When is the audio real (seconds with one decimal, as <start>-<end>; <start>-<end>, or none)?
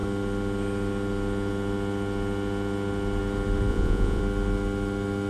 0.0-3.7; 4.2-5.3